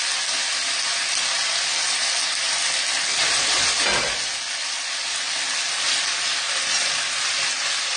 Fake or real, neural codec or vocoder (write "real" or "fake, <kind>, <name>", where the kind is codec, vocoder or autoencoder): real